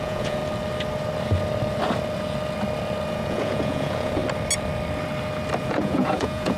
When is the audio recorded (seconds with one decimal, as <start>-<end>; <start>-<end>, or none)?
0.4-3.1; 4.2-5.6